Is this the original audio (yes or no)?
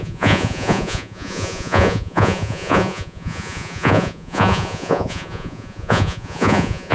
no